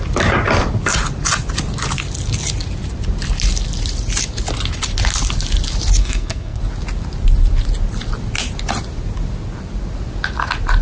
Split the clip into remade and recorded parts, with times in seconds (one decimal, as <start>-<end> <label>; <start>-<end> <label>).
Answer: 0.0-6.0 recorded; 6.0-6.6 remade; 6.6-10.8 recorded